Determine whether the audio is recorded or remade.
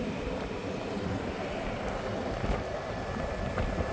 recorded